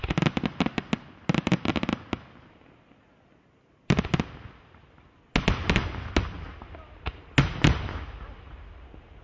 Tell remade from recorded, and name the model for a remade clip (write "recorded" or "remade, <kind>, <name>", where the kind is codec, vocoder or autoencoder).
recorded